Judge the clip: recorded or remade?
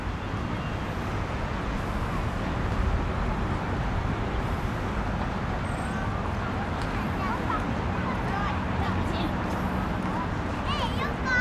recorded